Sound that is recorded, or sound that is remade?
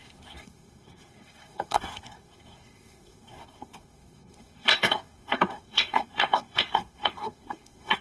remade